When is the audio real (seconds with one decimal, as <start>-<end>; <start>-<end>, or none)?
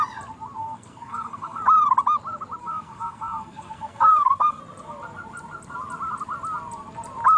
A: 0.0-0.6; 1.6-2.6; 4.6-7.4